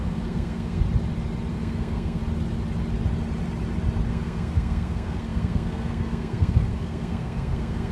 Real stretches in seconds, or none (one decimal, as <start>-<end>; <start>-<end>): 0.8-1.5; 2.2-4.1